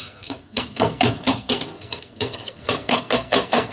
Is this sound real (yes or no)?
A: no